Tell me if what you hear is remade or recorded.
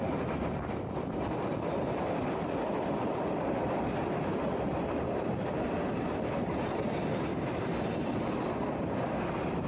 recorded